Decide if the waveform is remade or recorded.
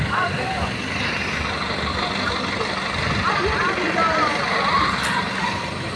recorded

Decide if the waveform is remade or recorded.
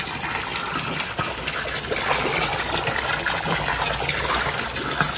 recorded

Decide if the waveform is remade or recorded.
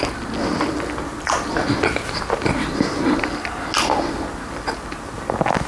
recorded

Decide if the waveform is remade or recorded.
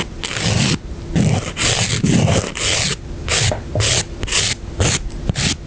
recorded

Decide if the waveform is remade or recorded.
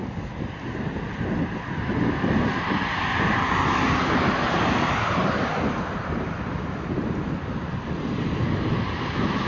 recorded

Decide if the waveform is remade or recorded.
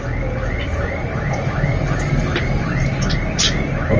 recorded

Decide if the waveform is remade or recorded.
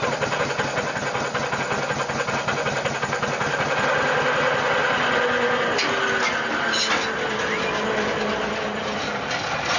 recorded